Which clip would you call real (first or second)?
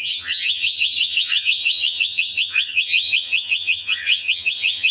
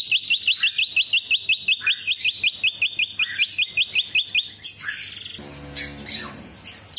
second